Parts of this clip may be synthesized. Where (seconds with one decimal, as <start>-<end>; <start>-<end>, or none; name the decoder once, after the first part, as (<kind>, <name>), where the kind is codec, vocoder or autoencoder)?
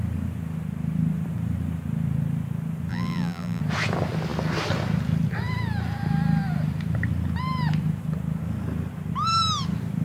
2.9-3.6 (vocoder, BigVGAN v2)